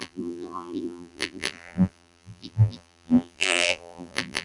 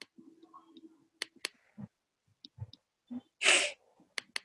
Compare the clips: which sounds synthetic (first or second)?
first